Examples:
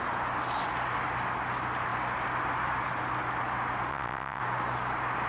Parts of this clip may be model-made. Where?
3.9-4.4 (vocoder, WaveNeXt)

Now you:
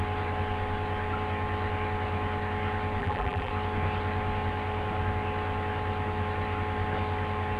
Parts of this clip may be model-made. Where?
3.0-3.5 (vocoder, BigVGAN v2)

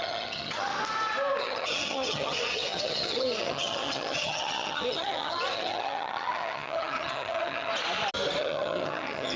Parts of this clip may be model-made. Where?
0.0-0.7 (vocoder, HiFi-GAN); 1.4-7.7; 8.4-9.4

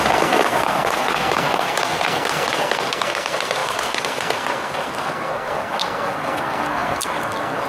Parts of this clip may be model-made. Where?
0.0-7.7 (codec, SNAC)

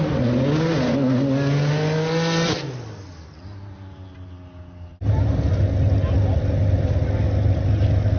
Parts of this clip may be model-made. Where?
4.9-5.5 (vocoder, BigVGAN v2)

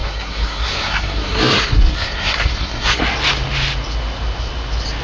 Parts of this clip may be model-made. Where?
0.0-3.0 (codec, SNAC)

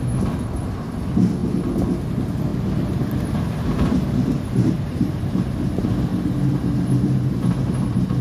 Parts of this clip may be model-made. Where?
2.5-5.3 (vocoder, BigVGAN v2); 6.1-7.6